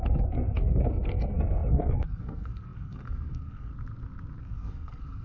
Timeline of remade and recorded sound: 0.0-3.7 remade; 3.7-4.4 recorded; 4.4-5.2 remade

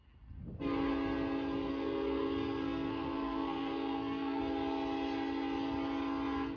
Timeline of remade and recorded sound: 0.0-1.7 recorded; 1.7-4.4 remade; 4.4-6.6 recorded

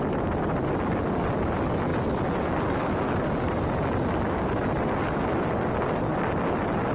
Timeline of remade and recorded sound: 0.0-6.9 recorded